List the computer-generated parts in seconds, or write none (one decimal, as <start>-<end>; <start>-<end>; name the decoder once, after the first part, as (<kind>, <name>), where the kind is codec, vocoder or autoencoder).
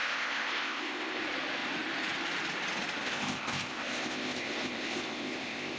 0.0-1.2 (codec, ZipCodec); 3.0-5.8